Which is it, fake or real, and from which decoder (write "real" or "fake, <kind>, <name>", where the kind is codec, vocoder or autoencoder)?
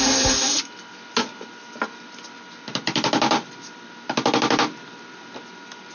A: real